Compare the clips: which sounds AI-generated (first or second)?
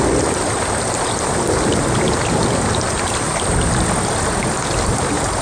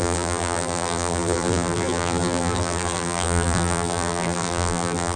second